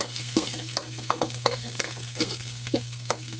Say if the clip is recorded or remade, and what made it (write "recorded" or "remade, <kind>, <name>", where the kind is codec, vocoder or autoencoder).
remade, codec, SNAC